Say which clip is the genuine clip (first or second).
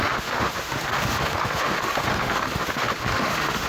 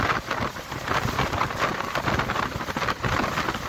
second